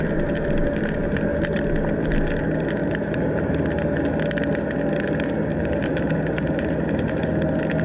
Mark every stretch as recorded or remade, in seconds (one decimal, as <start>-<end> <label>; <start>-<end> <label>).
0.0-1.0 recorded; 1.0-1.6 remade; 1.6-2.8 recorded; 2.8-3.5 remade; 3.5-5.5 recorded; 5.5-7.3 remade; 7.3-7.8 recorded